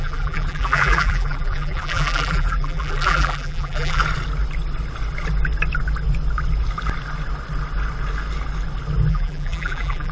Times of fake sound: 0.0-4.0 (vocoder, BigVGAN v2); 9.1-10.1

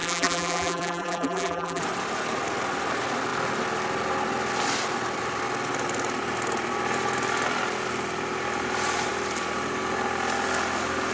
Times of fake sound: 0.0-1.8 (vocoder, BigVGAN v2)

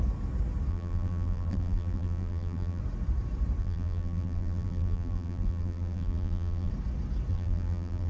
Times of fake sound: 0.7-2.8 (vocoder, BigVGAN v2); 3.6-6.7; 7.3-8.1

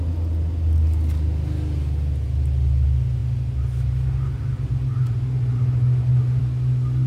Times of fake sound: 3.2-6.4 (vocoder, BigVGAN v2)

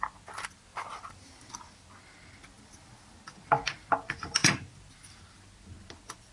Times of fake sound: 0.7-1.3 (vocoder, BigVGAN v2); 4.4-5.1

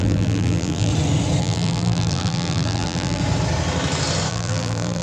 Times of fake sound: 0.0-0.9 (vocoder, BigVGAN v2); 1.4-3.2; 4.3-5.0

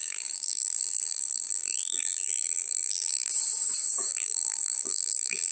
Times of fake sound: 0.0-3.3 (vocoder, BigVGAN v2); 4.1-5.5